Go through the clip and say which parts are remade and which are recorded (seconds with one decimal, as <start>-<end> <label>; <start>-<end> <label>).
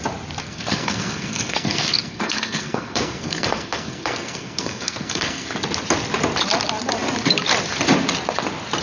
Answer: 0.0-0.4 recorded; 0.4-5.5 remade; 5.5-8.8 recorded